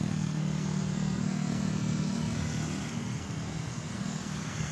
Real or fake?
fake